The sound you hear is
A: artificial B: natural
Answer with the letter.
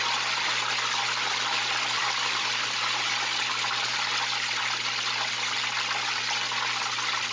B